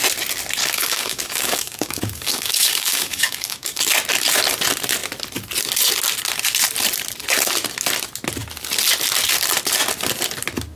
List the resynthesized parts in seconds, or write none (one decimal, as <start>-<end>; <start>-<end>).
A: 0.6-3.8